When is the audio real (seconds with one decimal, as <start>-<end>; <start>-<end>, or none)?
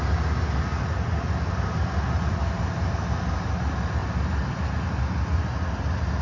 0.0-6.2